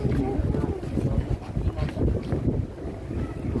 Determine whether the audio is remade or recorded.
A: recorded